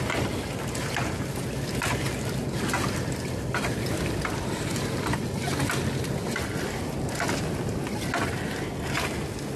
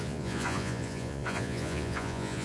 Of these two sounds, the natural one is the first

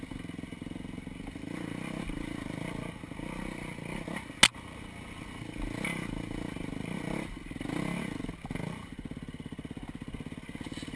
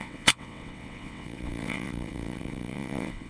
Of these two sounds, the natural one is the first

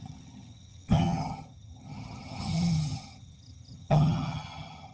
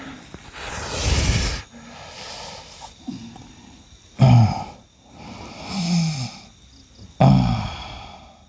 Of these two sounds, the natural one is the second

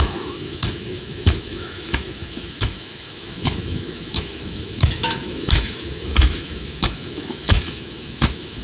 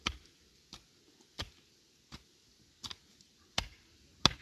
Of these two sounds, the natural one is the second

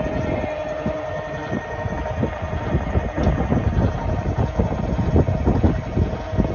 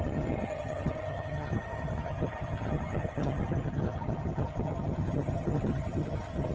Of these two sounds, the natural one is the first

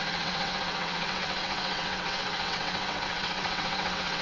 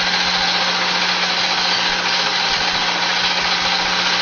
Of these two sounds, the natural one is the second